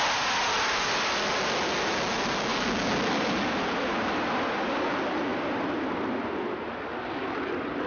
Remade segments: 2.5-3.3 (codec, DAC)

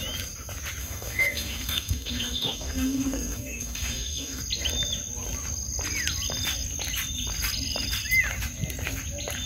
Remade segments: 0.8-4.4 (codec, DAC)

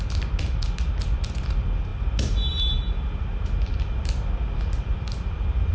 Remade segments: none

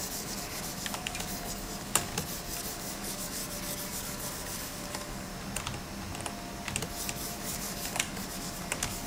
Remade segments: 0.0-2.1 (codec, DAC); 2.7-3.4; 3.9-5.3; 7.4-9.1

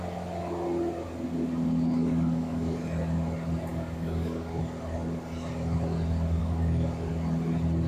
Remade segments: 2.0-2.8 (codec, DAC); 3.7-4.6; 6.4-7.1